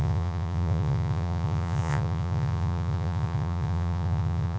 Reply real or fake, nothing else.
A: fake